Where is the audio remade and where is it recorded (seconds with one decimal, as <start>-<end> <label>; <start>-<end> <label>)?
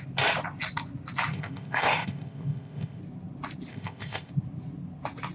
0.0-1.3 recorded; 1.3-3.0 remade; 3.0-3.7 recorded; 3.7-4.3 remade; 4.3-5.3 recorded